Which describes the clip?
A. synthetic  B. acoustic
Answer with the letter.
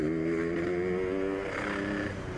B